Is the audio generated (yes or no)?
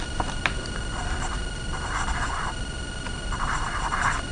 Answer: no